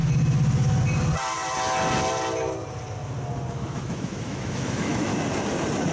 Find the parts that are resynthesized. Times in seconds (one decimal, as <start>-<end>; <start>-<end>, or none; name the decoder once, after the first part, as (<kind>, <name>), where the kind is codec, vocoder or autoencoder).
3.5-5.1 (autoencoder, DAC-VAE)